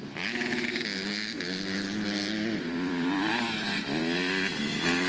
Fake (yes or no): no